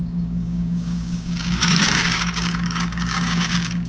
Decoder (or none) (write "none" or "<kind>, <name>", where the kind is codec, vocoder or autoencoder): codec, DAC